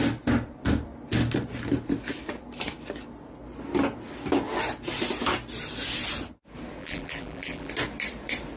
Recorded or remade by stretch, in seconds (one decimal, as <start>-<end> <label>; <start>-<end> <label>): 0.0-6.8 recorded; 6.8-7.7 remade; 7.7-8.6 recorded